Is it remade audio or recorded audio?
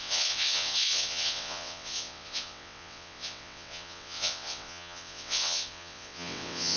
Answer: remade